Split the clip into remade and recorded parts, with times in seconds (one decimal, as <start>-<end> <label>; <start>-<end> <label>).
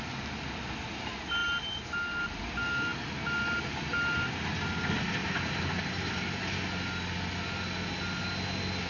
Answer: 0.0-5.2 recorded; 5.2-6.4 remade; 6.4-8.9 recorded